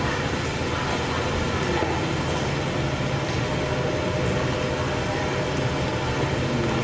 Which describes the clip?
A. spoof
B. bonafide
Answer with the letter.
B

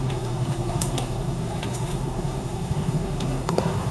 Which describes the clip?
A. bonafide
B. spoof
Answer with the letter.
B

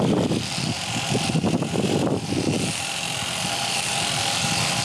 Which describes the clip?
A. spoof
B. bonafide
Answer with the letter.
B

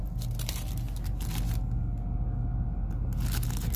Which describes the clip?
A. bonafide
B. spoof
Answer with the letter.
A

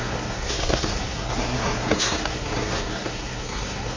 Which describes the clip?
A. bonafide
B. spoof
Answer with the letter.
B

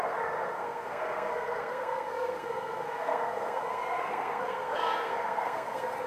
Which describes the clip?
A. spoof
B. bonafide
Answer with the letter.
A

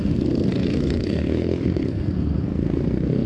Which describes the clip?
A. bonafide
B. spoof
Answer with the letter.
B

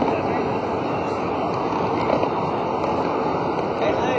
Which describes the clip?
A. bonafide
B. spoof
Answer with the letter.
A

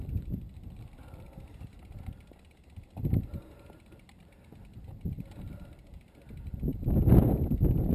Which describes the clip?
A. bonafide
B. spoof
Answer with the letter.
A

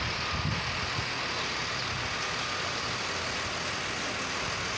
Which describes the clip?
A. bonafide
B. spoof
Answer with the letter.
A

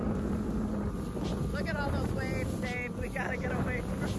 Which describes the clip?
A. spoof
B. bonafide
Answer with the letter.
B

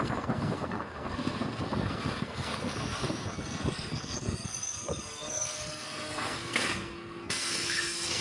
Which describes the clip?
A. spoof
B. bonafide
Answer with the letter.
A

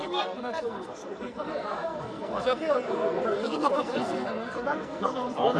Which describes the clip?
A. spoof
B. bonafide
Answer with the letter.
A